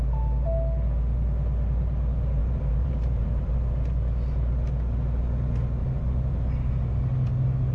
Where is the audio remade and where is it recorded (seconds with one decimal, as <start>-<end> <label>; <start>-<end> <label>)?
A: 0.0-2.4 recorded; 2.4-3.5 remade; 3.5-5.8 recorded; 5.8-6.7 remade; 6.7-7.7 recorded